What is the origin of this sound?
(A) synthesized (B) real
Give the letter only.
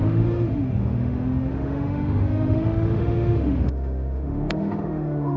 A